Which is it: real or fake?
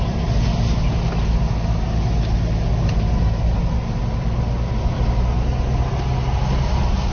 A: real